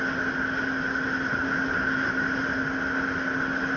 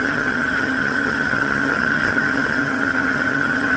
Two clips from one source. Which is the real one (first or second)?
first